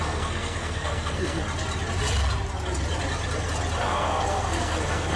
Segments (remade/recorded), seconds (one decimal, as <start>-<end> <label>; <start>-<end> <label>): 0.0-1.4 remade; 1.4-3.8 recorded; 3.8-5.2 remade